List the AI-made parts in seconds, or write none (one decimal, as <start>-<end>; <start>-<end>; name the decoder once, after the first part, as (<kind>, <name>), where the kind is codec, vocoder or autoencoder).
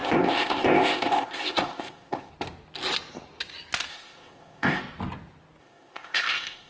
0.0-2.3 (codec, ZipCodec); 3.9-4.8; 5.6-6.7